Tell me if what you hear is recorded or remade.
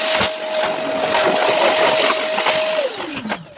recorded